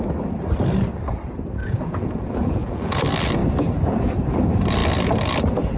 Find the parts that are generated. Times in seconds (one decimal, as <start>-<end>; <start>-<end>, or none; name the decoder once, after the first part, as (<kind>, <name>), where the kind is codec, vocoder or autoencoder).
1.6-3.0 (vocoder, Vocos)